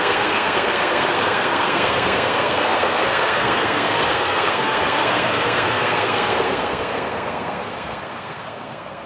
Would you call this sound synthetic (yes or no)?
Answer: yes